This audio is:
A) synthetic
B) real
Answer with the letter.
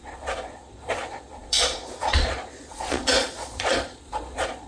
A